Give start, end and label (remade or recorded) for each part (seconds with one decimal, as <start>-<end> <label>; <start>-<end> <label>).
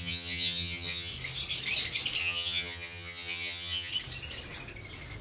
0.0-1.1 remade; 1.1-2.2 recorded; 2.2-3.9 remade; 3.9-5.2 recorded